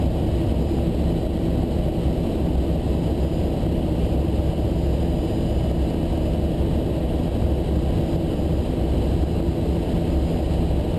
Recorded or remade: recorded